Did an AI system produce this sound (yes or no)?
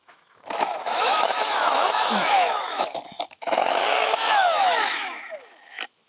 yes